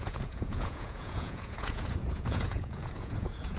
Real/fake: fake